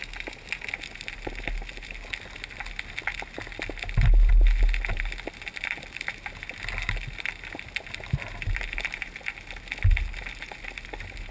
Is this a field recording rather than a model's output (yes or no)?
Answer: yes